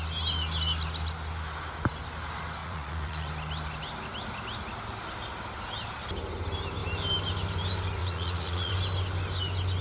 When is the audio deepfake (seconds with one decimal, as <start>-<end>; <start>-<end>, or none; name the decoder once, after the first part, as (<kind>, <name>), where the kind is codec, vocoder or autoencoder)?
2.6-3.3 (vocoder, Vocos); 8.0-8.7